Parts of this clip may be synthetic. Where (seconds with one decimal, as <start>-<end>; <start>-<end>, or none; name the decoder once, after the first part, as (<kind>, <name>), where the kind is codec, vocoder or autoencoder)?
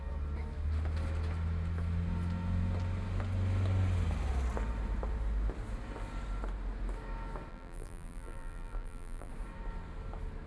7.5-9.3 (vocoder, BigVGAN v2)